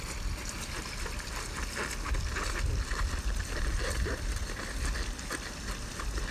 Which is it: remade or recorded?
recorded